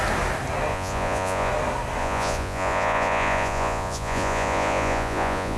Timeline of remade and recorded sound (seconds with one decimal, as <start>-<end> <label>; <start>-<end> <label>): 0.0-0.7 recorded; 0.7-1.5 remade; 1.5-2.0 recorded; 2.0-5.6 remade